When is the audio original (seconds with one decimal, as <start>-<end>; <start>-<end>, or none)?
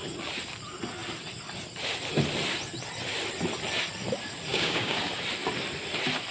0.0-4.5; 5.0-6.3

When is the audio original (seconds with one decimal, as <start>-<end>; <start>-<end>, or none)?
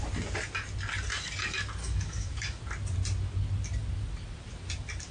0.0-1.8; 2.6-5.1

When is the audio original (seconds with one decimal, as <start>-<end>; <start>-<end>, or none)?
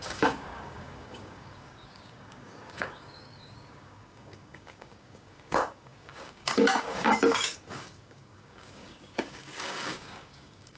none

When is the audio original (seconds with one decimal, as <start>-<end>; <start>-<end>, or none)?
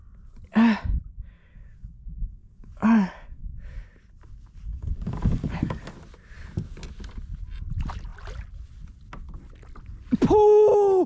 0.0-1.4; 3.4-4.7; 5.9-11.1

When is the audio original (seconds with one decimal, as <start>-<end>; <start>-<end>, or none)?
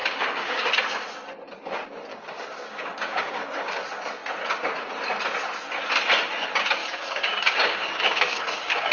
0.7-2.1; 3.8-6.8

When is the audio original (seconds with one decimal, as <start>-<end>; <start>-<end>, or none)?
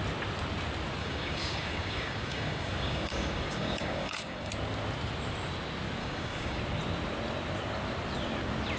0.0-1.0; 4.5-6.0; 6.6-8.8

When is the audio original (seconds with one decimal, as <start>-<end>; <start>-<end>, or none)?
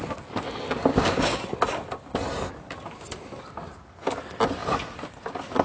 0.0-0.9; 1.4-5.6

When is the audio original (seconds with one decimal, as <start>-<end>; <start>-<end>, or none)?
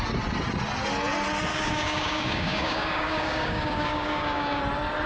0.0-1.5; 4.6-5.1